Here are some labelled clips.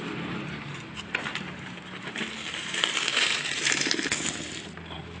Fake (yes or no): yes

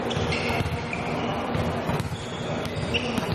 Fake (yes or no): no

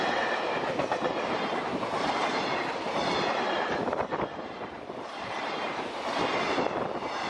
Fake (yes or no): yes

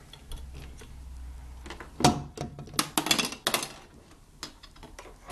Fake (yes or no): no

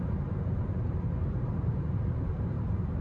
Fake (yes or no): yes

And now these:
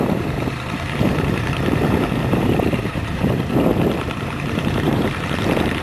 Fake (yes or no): yes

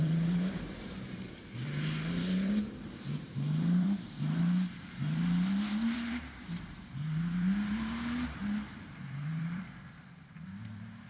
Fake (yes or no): yes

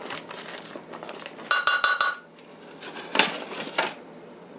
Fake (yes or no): yes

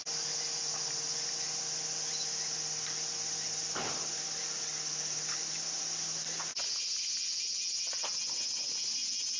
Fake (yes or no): no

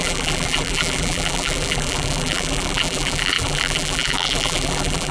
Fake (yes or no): yes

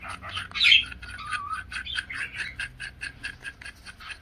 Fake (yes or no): no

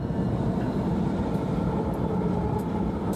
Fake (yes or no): no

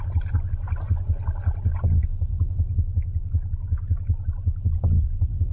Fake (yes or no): no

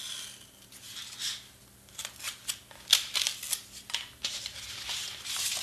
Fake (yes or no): no